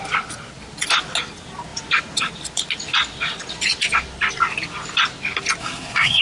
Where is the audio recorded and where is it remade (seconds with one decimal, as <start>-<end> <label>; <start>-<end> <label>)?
0.0-5.6 recorded; 5.6-6.2 remade